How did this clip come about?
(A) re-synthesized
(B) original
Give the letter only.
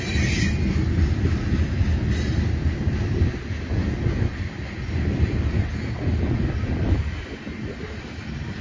B